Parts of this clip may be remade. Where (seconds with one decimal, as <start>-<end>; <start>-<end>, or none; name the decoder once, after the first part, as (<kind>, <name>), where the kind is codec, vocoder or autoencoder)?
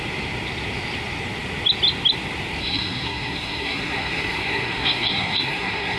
2.6-6.0 (codec, SNAC)